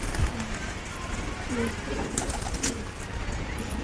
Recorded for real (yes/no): yes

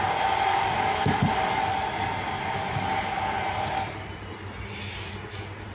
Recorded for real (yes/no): yes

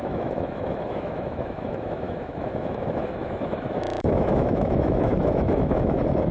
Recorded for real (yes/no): no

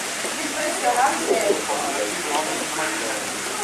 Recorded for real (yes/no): yes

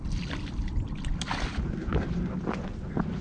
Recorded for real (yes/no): yes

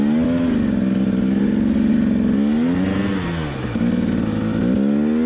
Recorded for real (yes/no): yes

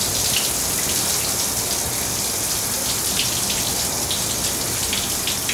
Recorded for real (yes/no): yes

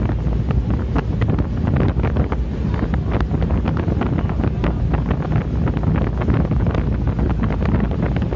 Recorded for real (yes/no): yes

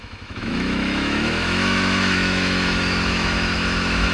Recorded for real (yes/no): no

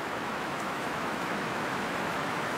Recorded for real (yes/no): no